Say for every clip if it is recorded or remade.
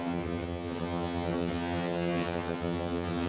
remade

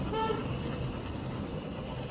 recorded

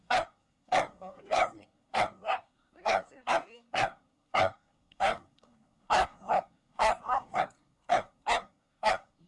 remade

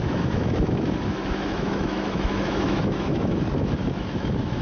remade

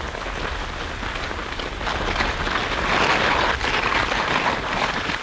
recorded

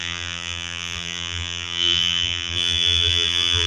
remade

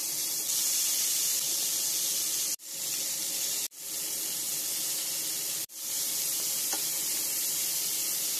recorded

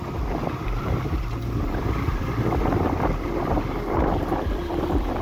remade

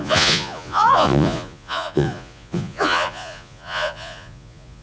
remade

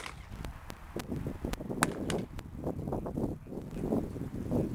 recorded